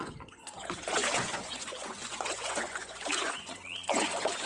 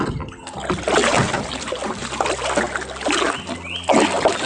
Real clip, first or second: second